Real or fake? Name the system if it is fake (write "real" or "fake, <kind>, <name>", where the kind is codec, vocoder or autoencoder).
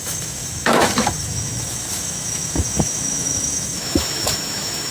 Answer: fake, autoencoder, DAC-VAE